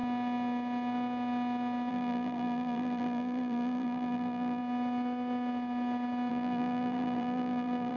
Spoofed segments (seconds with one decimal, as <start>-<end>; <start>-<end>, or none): 1.9-4.6; 6.3-8.0